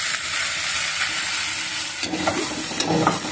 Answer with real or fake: real